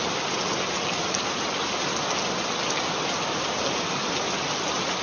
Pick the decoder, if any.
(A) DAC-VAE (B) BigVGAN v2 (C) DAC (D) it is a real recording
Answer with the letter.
D